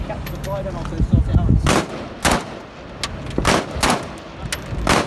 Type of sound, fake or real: real